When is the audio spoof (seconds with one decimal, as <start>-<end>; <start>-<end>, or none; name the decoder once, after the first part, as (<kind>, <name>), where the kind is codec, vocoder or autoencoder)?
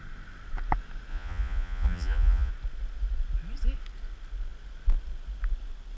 1.1-2.5 (vocoder, Vocos)